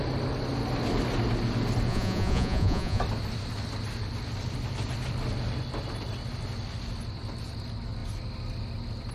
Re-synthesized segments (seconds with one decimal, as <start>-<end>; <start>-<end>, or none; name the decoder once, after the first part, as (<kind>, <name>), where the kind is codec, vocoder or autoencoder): 1.9-3.0 (vocoder, Vocos)